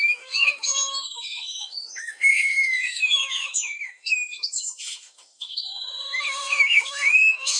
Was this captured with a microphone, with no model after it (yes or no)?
no